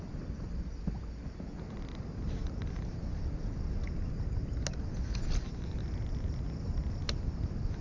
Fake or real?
real